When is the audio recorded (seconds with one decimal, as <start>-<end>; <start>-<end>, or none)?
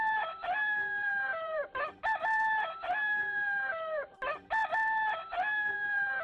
4.6-5.7